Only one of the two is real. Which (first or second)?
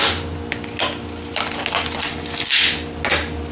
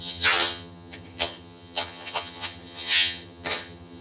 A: first